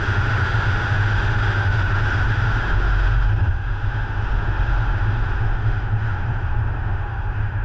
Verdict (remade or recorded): remade